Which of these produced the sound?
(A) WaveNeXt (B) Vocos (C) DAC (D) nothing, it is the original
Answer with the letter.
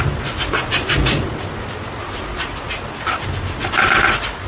D